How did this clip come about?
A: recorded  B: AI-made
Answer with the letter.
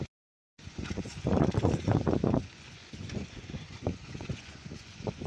B